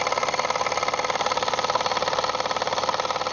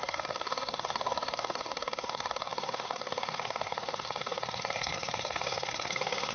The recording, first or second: first